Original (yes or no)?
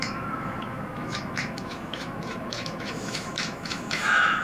no